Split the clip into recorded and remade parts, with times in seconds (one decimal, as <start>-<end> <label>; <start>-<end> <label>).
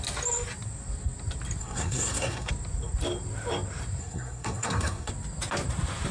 0.0-1.6 recorded; 1.6-2.5 remade; 2.5-4.0 recorded; 4.0-5.1 remade; 5.1-6.1 recorded